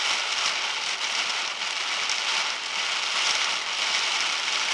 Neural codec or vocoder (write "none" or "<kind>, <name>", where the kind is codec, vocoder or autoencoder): none